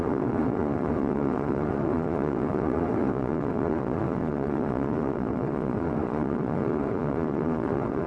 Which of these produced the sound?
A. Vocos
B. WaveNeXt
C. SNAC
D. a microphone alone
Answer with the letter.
A